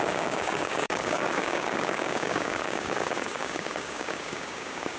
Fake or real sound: fake